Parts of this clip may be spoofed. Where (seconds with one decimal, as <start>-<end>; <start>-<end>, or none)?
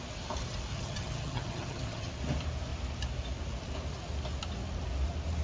0.7-2.1